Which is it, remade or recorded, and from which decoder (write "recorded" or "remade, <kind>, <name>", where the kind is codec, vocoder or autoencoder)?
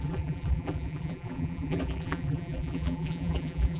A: remade, vocoder, BigVGAN v2